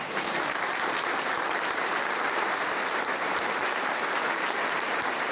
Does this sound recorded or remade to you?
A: remade